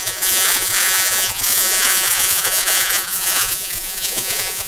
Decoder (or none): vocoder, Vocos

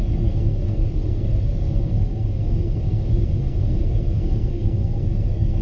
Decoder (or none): codec, SNAC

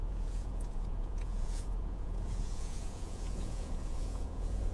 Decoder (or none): vocoder, Vocos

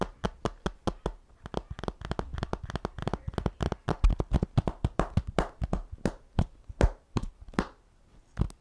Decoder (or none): none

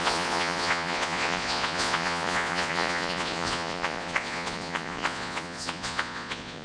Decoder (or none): vocoder, Vocos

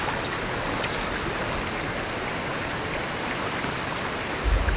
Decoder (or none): none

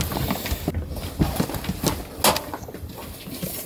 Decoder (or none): none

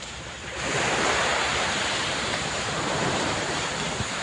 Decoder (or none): vocoder, BigVGAN v2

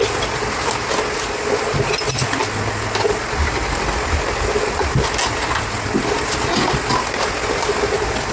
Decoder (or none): none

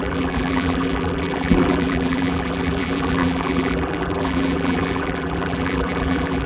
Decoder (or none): vocoder, BigVGAN v2